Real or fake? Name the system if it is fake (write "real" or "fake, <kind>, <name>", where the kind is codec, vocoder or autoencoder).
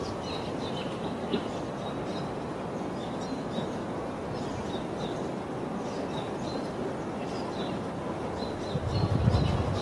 real